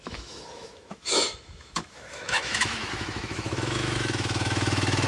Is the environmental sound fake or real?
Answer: fake